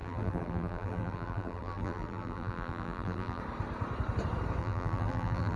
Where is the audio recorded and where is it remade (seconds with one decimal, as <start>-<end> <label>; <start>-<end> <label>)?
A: 0.0-3.4 remade; 3.4-4.6 recorded; 4.6-5.6 remade